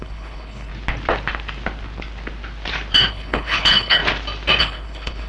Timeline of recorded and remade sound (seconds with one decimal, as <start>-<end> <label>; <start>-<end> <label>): 0.0-0.7 remade; 0.7-3.1 recorded; 3.1-4.0 remade; 4.0-4.6 recorded; 4.6-5.3 remade